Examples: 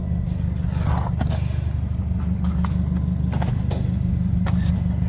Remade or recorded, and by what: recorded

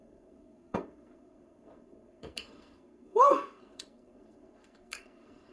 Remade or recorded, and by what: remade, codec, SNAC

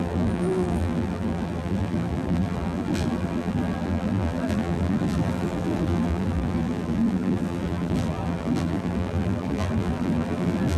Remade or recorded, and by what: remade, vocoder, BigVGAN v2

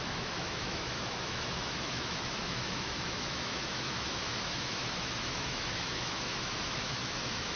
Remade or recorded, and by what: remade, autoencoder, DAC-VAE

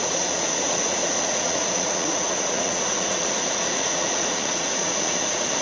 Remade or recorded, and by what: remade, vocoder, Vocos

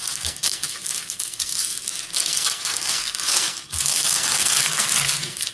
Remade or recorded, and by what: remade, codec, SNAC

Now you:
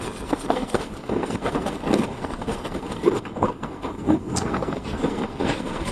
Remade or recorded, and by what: remade, codec, SNAC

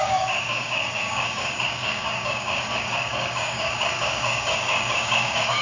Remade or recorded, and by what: remade, codec, DAC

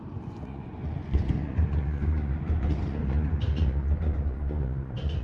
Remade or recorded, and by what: remade, vocoder, Vocos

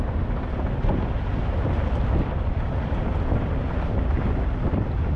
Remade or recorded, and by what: recorded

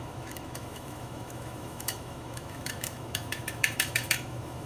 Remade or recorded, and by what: remade, autoencoder, DAC-VAE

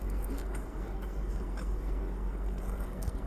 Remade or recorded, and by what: remade, codec, SNAC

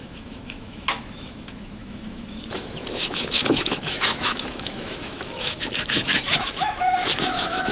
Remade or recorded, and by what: remade, autoencoder, DAC-VAE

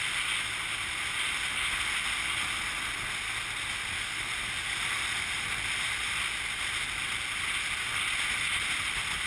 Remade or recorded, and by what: recorded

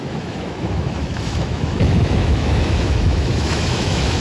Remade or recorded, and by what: remade, autoencoder, DAC-VAE